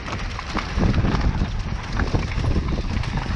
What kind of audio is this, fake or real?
real